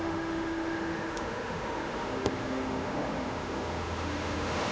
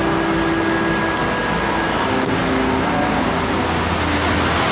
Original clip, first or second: second